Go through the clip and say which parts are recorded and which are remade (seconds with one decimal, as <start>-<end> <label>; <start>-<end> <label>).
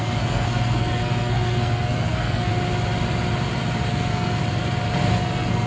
0.0-2.5 remade; 2.5-3.9 recorded; 3.9-4.4 remade; 4.4-5.1 recorded; 5.1-5.7 remade